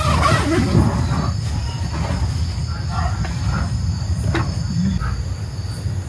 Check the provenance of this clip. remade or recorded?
recorded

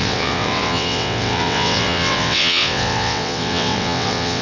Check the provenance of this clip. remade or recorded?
remade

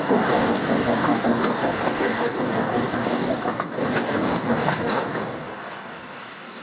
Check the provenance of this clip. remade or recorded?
remade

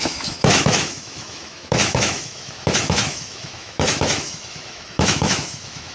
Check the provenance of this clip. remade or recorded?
remade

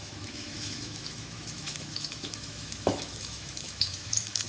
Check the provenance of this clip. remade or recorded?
remade